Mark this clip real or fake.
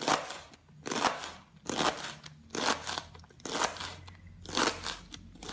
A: real